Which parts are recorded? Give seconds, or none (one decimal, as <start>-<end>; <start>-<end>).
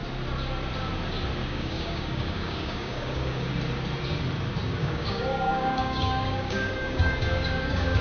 0.0-1.4; 3.5-4.8